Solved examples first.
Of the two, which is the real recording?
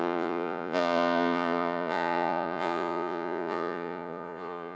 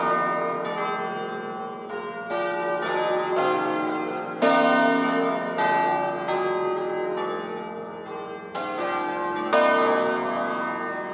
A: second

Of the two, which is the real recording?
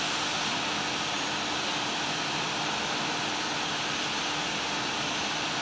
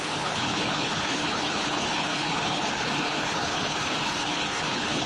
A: first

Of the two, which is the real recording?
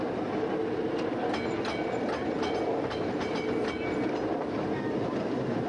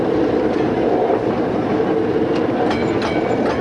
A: first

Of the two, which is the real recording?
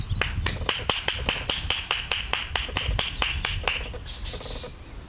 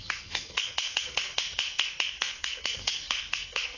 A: first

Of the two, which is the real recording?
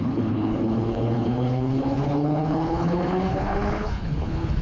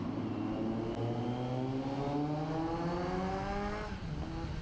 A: second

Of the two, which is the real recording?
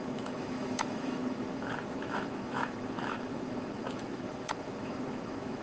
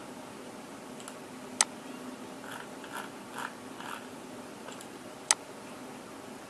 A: second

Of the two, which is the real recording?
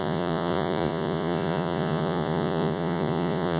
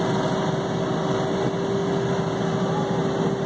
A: second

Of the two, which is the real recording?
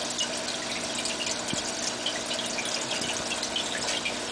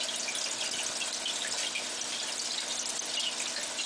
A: first